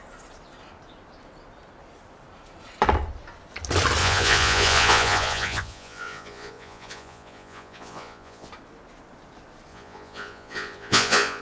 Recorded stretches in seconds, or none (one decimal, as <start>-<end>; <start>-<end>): 0.0-4.0; 8.5-9.7